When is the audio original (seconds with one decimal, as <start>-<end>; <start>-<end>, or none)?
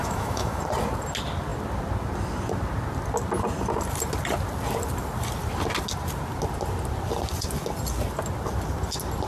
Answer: 0.6-9.3